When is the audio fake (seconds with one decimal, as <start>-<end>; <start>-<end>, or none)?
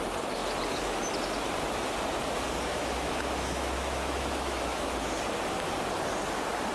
2.7-4.9